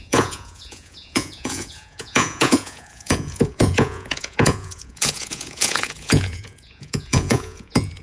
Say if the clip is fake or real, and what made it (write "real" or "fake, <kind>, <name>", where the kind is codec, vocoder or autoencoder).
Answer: fake, vocoder, Vocos